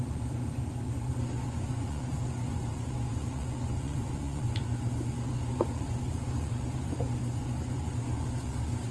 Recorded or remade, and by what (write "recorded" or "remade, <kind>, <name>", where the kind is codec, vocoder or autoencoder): remade, vocoder, Vocos